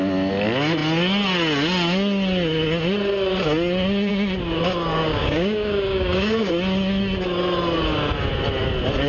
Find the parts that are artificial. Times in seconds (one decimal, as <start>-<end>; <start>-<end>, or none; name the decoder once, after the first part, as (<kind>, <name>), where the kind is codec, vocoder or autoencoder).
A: 5.1-6.5 (codec, DAC)